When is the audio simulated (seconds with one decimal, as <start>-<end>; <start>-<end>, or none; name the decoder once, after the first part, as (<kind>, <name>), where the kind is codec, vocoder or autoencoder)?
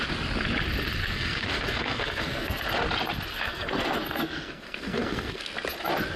1.0-2.6 (codec, SNAC); 3.3-5.4